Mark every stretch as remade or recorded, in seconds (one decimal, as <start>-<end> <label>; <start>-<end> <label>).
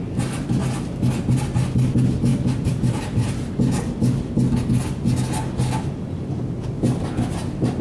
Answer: 0.0-2.3 recorded; 2.3-3.2 remade; 3.2-7.8 recorded